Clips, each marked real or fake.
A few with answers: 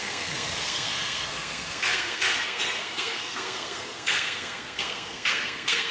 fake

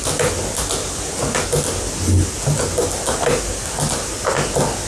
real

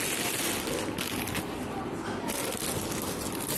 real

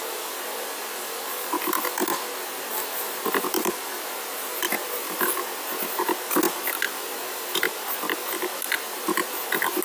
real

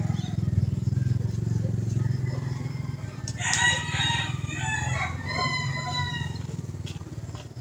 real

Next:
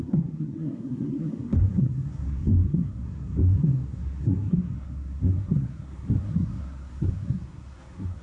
fake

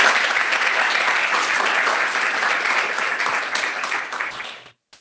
real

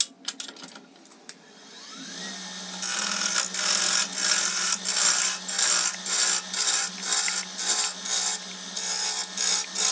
real